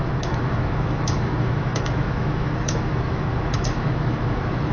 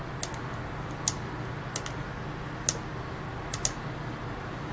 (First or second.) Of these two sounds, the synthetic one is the first